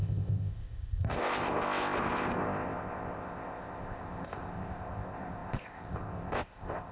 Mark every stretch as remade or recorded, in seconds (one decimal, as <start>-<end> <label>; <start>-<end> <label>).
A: 0.0-6.9 remade